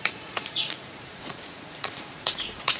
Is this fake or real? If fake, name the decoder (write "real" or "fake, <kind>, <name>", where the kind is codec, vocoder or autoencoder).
fake, vocoder, Vocos